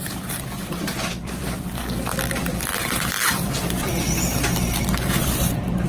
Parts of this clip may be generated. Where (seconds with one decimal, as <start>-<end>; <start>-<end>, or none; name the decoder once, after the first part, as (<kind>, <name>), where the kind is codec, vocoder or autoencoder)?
0.0-1.8 (vocoder, BigVGAN v2); 2.3-3.9; 5.2-5.9